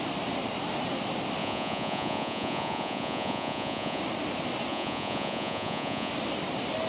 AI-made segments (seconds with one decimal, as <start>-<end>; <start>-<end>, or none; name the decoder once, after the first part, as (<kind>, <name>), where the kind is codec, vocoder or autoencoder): 1.4-4.0 (vocoder, Vocos); 4.7-6.1